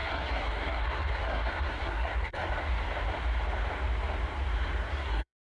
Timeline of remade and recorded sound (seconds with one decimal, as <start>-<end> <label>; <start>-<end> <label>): 0.0-2.5 remade; 2.5-4.9 recorded; 4.9-5.6 remade

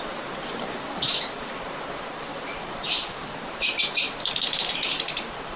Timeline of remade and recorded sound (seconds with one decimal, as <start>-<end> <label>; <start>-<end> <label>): 0.0-5.6 remade

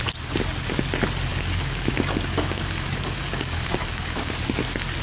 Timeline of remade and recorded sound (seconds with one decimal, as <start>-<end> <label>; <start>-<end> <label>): 0.0-1.3 recorded; 1.3-4.3 remade; 4.3-5.0 recorded

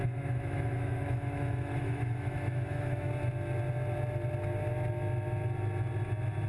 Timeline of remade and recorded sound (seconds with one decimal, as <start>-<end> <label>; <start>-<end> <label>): 0.0-3.1 remade; 3.1-6.5 recorded

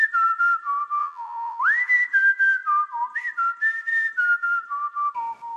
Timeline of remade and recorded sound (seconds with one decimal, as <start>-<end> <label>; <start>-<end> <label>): 0.0-1.0 recorded; 1.0-1.6 remade; 1.6-5.6 recorded

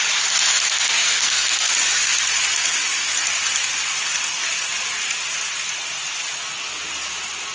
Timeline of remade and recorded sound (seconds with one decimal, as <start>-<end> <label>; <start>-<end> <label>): 0.0-0.5 recorded; 0.5-1.7 remade; 1.7-7.5 recorded

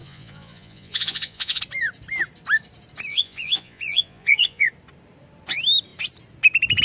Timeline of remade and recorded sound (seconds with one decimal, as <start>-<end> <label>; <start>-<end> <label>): 0.0-1.6 remade; 1.6-3.1 recorded; 3.1-4.7 remade; 4.7-6.8 recorded

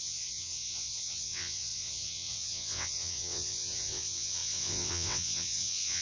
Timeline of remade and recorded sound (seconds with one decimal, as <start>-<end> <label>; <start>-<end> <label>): 0.0-6.0 remade